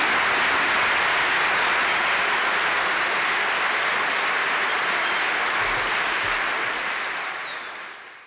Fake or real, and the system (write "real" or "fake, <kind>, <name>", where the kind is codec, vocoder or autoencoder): real